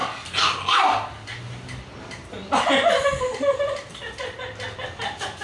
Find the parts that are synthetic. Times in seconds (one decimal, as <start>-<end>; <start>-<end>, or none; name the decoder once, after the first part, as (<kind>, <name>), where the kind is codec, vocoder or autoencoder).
none